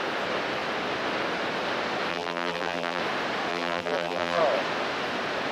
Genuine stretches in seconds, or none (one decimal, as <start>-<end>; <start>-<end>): 0.0-2.1; 3.0-3.5; 4.4-5.5